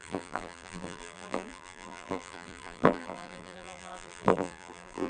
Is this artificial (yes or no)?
yes